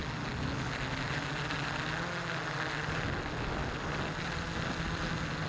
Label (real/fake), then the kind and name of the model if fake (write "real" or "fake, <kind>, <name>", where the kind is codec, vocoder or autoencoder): real